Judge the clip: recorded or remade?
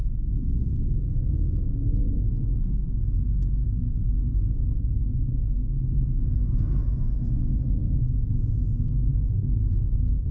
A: remade